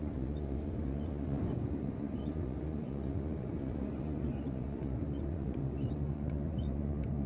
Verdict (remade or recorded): remade